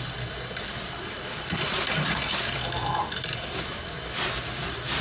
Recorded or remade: recorded